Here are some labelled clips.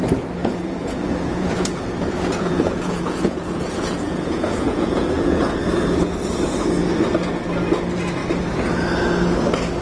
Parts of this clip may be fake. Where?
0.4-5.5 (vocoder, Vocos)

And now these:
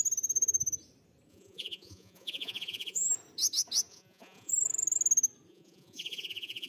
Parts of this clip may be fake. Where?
1.3-3.1 (vocoder, Vocos); 3.9-4.5; 5.5-6.7

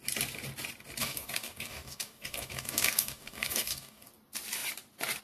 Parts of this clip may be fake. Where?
1.0-4.1 (codec, DAC)

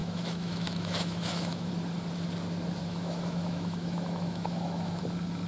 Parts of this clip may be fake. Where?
0.0-1.7 (autoencoder, DAC-VAE); 2.8-5.0

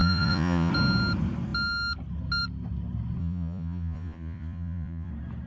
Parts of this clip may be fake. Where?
0.0-0.7 (vocoder, Vocos); 3.2-5.1